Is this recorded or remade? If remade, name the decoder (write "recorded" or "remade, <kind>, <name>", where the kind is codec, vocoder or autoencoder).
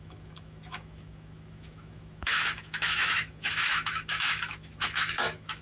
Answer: remade, autoencoder, DAC-VAE